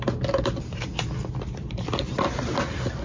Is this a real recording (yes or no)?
yes